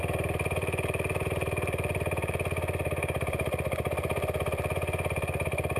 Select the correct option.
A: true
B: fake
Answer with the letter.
A